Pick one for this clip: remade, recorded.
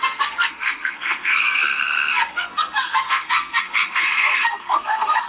remade